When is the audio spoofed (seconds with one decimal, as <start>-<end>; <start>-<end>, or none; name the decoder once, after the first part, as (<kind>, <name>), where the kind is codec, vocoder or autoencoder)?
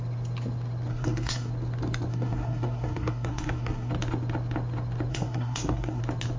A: 0.9-1.5 (codec, SNAC); 2.1-3.9; 5.1-6.0